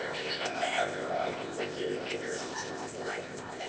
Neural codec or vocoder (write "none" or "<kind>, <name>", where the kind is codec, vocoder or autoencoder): codec, ZipCodec